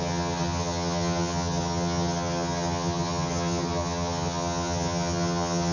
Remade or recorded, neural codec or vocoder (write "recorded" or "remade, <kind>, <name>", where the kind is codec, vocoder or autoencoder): remade, vocoder, HiFi-GAN